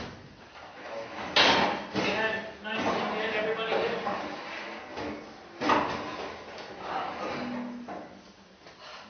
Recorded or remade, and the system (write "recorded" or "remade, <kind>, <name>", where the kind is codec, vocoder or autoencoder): recorded